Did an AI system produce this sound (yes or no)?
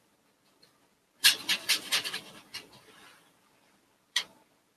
no